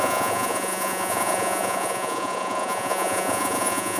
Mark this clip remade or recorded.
remade